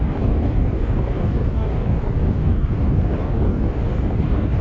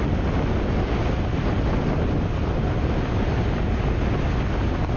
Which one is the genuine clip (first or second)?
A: second